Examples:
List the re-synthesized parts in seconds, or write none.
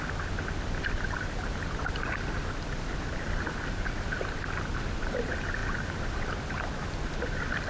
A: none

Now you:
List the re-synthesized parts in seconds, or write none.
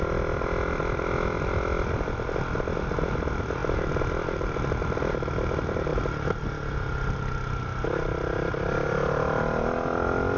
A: none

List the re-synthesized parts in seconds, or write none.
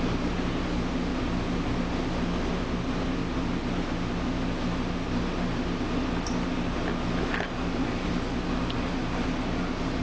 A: none